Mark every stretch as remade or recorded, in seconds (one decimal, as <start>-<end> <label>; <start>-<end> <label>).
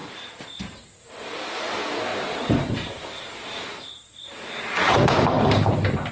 0.0-2.1 recorded; 2.1-6.1 remade